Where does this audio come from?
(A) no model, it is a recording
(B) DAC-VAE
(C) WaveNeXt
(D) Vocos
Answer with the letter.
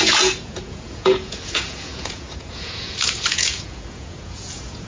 D